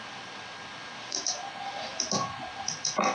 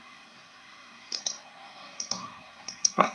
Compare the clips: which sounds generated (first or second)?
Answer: second